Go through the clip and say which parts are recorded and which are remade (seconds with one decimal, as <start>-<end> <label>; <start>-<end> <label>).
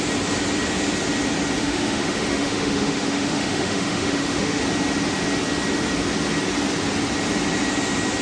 0.0-1.6 recorded; 1.6-4.6 remade; 4.6-8.2 recorded